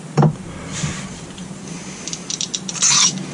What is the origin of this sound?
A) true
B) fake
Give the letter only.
A